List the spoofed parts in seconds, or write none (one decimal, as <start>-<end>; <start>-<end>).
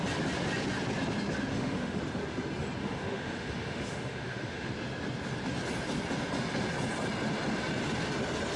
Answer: 1.5-2.0; 2.8-4.7